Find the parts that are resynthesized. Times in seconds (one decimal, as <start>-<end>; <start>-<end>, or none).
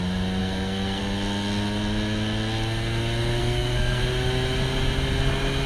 0.4-1.0; 3.4-4.0